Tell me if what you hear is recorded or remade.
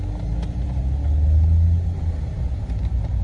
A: recorded